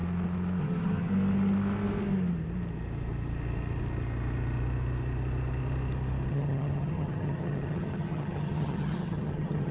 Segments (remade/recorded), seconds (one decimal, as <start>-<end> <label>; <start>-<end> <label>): 0.0-0.6 recorded; 0.6-1.1 remade; 1.1-6.3 recorded; 6.3-9.7 remade

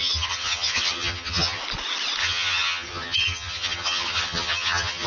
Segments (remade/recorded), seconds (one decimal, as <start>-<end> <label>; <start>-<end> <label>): 0.0-1.6 remade; 1.6-2.2 recorded; 2.2-5.1 remade

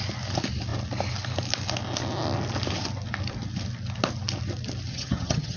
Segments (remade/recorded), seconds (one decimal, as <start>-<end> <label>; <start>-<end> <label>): 0.0-4.9 recorded; 4.9-5.6 remade